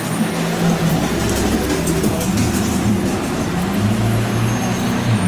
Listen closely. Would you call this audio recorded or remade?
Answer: recorded